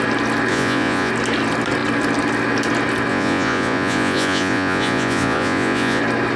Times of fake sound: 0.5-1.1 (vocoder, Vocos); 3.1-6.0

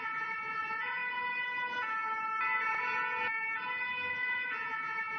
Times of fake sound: 0.0-1.0 (vocoder, Vocos); 4.1-5.2